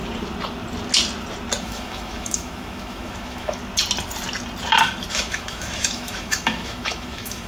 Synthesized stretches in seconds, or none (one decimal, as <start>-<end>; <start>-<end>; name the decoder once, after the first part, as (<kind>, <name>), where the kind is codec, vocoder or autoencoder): 1.6-3.6 (autoencoder, DAC-VAE); 5.1-7.5